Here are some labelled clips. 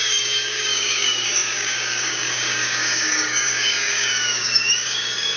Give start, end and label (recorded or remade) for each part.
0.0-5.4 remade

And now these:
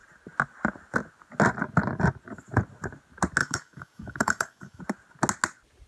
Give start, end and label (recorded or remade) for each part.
0.0-3.4 recorded; 3.4-4.8 remade; 4.8-5.9 recorded

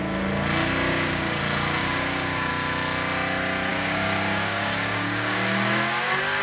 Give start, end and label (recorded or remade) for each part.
0.0-0.9 recorded; 0.9-1.4 remade; 1.4-1.8 recorded; 1.8-2.5 remade; 2.5-3.7 recorded; 3.7-6.4 remade